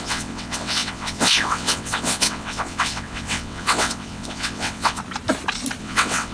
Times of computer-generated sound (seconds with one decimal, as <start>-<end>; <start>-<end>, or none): 0.0-5.0; 5.8-6.3